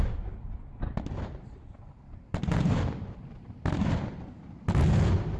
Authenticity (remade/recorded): recorded